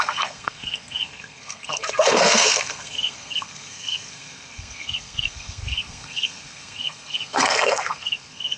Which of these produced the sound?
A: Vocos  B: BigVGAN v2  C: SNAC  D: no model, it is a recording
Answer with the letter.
C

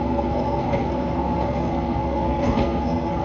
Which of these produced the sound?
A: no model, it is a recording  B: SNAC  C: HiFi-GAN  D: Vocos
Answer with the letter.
B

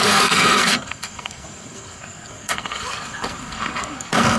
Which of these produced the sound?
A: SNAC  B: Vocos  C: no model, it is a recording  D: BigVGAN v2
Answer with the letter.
A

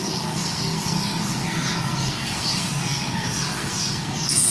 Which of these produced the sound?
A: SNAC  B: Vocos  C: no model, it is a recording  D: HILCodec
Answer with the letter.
A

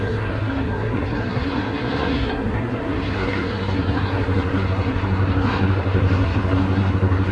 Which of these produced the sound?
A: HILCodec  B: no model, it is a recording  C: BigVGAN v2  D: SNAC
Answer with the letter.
D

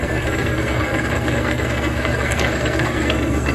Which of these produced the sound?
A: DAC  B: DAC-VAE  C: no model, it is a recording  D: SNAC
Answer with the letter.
D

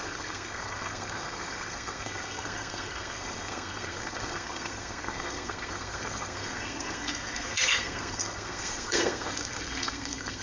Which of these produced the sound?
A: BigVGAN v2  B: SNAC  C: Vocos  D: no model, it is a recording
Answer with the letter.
B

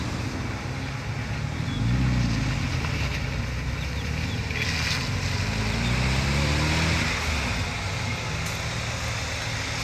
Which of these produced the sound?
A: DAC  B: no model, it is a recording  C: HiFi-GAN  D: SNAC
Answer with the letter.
B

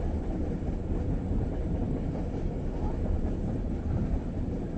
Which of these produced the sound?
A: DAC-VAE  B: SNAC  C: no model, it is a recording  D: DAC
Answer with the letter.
C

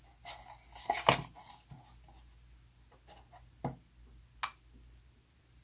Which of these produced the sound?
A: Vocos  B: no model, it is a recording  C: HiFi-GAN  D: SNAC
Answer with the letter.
B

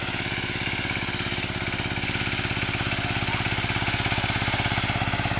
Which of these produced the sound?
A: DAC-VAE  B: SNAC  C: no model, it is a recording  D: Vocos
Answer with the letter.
C